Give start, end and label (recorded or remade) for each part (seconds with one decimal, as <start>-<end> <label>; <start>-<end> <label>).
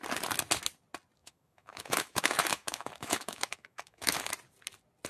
0.0-1.2 recorded; 1.2-4.3 remade; 4.3-5.1 recorded